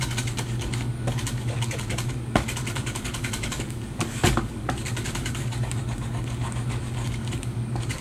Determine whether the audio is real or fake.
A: fake